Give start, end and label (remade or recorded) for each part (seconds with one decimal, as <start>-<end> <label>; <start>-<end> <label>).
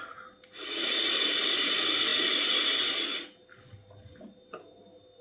0.0-5.2 recorded